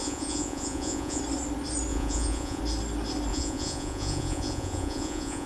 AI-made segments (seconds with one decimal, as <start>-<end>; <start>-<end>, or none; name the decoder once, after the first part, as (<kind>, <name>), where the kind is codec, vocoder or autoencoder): 0.0-1.2 (vocoder, Vocos); 1.9-2.6; 3.3-5.5